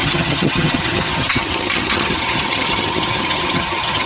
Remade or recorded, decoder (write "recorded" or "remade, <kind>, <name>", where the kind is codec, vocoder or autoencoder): remade, vocoder, HiFi-GAN